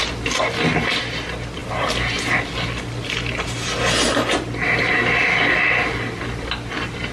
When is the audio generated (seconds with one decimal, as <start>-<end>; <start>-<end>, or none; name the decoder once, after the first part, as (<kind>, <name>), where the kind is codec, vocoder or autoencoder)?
none